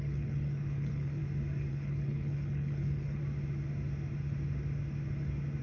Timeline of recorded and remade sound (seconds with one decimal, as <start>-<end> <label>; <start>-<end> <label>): 0.0-1.2 remade; 1.2-1.7 recorded; 1.7-3.2 remade; 3.2-5.6 recorded